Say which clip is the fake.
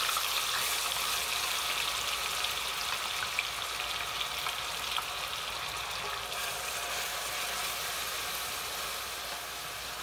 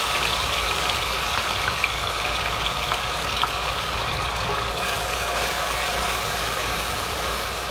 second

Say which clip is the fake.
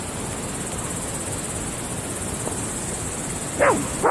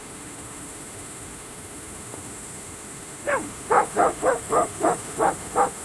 second